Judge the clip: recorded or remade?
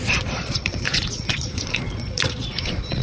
remade